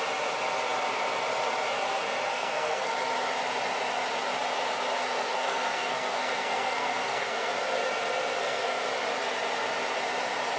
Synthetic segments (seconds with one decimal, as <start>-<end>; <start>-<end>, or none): 2.3-2.9; 5.0-7.5; 8.4-8.9